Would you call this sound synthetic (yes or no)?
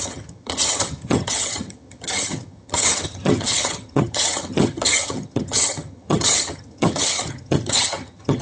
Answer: yes